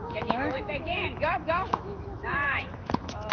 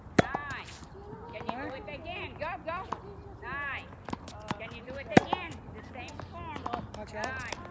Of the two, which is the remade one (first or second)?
first